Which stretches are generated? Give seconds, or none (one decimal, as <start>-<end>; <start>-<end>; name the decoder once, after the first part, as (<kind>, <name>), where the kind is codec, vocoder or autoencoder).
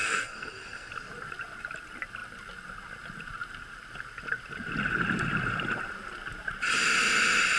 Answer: 0.0-0.9 (codec, SNAC)